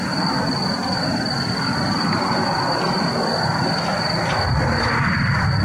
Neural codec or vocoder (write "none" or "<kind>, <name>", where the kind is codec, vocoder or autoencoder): none